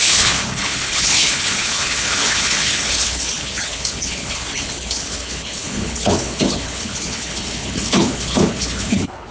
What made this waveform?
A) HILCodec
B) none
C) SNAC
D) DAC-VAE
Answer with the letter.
A